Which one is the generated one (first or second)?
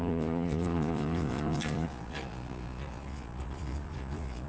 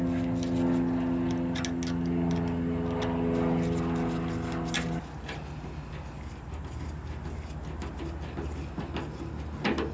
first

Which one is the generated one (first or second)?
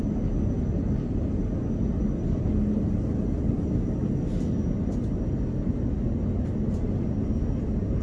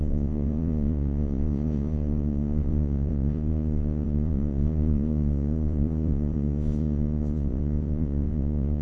second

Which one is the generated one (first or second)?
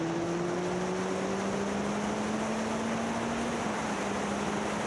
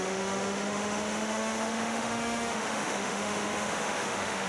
second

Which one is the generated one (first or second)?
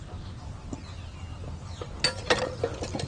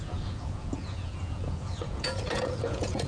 second